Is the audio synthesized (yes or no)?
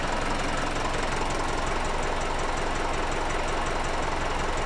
no